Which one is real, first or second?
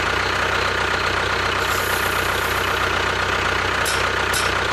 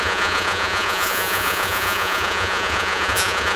first